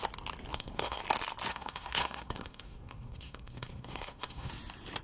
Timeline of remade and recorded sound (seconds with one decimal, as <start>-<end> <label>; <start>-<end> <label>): 0.0-0.5 recorded; 0.5-1.0 remade; 1.0-1.5 recorded; 1.5-4.5 remade; 4.5-5.0 recorded

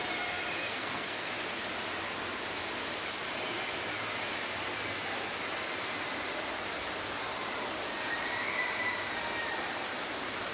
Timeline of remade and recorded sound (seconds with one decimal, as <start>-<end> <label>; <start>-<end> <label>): 0.0-0.7 recorded; 0.7-1.3 remade; 1.3-10.5 recorded

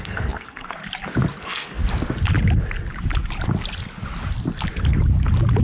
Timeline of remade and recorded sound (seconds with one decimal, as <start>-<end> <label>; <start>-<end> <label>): 0.0-0.8 remade; 0.8-1.4 recorded; 1.4-1.8 remade; 1.8-5.6 recorded

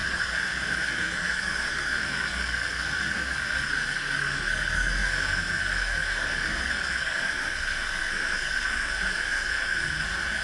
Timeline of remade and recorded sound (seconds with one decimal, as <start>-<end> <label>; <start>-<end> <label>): 0.0-10.4 remade

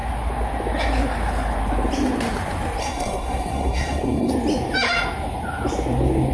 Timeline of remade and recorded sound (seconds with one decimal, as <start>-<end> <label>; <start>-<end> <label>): 0.0-2.8 recorded; 2.8-4.3 remade; 4.3-6.3 recorded

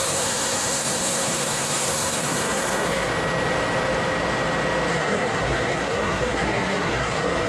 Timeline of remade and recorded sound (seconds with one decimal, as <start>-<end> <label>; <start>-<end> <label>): 0.0-3.1 remade; 3.1-4.9 recorded; 4.9-7.5 remade

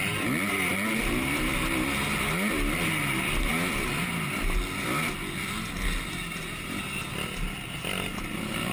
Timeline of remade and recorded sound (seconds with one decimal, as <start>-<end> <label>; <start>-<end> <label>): 0.0-8.7 recorded

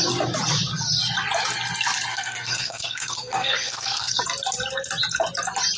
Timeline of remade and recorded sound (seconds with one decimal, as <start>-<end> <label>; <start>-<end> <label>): 0.0-2.1 recorded; 2.1-4.2 remade; 4.2-5.8 recorded